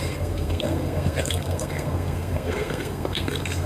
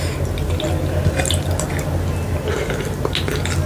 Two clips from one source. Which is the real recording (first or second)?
second